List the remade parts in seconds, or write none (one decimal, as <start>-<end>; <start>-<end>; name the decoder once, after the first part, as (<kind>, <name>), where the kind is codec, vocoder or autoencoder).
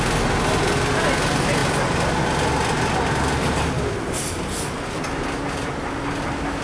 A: none